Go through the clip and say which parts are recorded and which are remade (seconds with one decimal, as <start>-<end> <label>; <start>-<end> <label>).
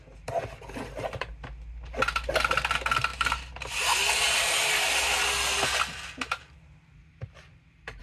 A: 0.0-8.0 recorded